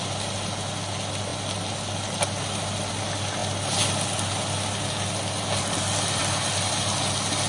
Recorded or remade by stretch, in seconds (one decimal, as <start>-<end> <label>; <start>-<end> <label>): 0.0-7.5 recorded